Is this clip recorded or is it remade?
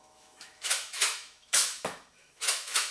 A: remade